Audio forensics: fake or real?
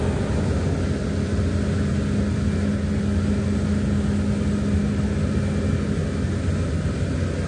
real